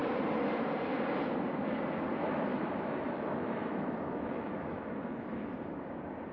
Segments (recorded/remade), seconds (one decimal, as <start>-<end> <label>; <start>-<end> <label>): 0.0-2.5 recorded; 2.5-5.4 remade; 5.4-6.3 recorded